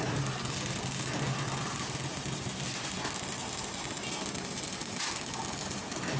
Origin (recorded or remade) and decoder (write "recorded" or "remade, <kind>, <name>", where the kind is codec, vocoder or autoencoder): recorded